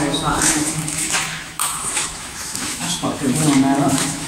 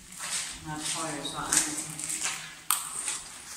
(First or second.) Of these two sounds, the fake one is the first